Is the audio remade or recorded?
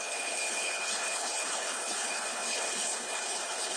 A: remade